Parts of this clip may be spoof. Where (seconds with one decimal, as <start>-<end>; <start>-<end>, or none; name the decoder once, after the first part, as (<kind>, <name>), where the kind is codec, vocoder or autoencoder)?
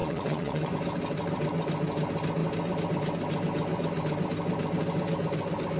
0.0-0.7 (vocoder, WaveNeXt)